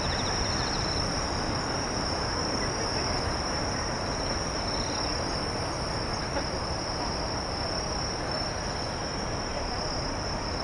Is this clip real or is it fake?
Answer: real